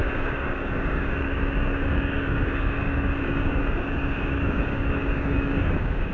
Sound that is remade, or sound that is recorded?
remade